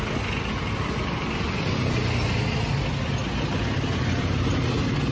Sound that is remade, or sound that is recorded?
recorded